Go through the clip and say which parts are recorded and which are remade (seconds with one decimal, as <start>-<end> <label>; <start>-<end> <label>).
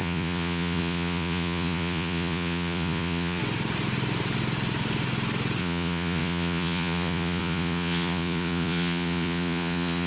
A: 0.0-3.4 remade; 3.4-5.6 recorded; 5.6-10.1 remade